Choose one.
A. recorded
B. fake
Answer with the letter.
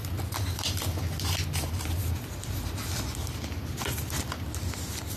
A